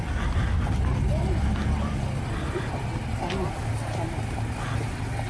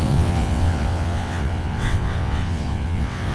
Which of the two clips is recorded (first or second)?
first